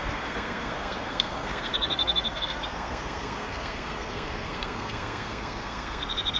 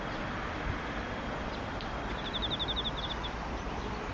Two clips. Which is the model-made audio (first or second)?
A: first